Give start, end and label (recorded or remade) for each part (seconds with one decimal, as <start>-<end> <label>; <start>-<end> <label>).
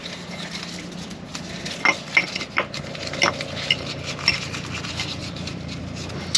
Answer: 0.0-5.2 recorded; 5.2-5.8 remade; 5.8-6.4 recorded